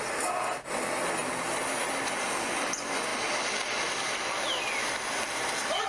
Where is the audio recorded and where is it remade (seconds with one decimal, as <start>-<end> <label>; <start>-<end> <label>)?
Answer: 0.0-5.9 recorded